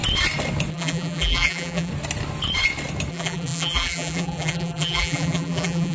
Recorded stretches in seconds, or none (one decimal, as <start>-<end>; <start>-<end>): 0.0-0.7; 1.9-3.1